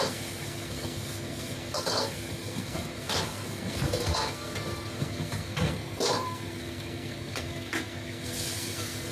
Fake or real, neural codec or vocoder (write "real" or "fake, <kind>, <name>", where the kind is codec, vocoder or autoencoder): fake, codec, SNAC